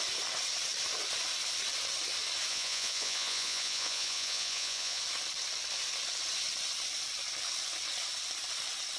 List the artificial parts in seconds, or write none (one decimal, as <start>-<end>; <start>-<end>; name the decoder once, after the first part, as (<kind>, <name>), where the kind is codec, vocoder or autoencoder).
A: 2.5-5.0 (vocoder, Vocos)